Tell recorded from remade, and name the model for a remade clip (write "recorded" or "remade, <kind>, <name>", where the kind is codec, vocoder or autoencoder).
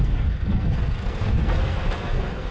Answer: remade, codec, SNAC